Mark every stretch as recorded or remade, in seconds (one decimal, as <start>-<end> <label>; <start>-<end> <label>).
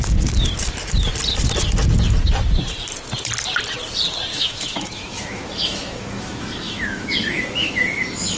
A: 0.0-4.3 recorded; 4.3-8.4 remade